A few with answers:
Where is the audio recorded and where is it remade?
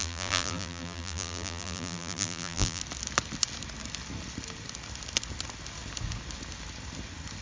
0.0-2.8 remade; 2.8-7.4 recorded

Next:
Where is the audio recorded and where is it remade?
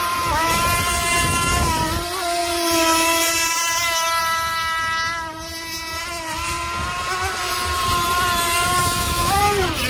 0.0-8.8 recorded; 8.8-9.4 remade; 9.4-9.9 recorded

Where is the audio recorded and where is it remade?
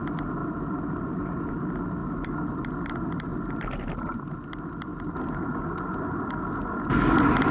0.0-0.4 recorded; 0.4-1.5 remade; 1.5-3.3 recorded; 3.3-4.3 remade; 4.3-7.5 recorded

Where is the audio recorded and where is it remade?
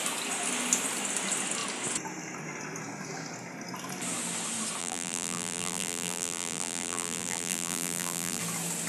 0.0-4.8 recorded; 4.8-8.4 remade; 8.4-8.9 recorded